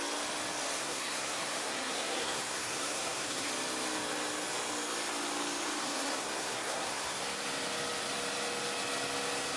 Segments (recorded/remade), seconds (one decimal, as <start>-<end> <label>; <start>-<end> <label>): 0.0-0.8 recorded; 0.8-3.5 remade; 3.5-5.8 recorded; 5.8-7.2 remade; 7.2-9.6 recorded